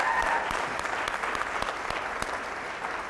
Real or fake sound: real